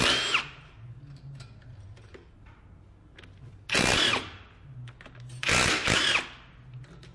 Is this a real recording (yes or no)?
yes